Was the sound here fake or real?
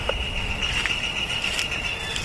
real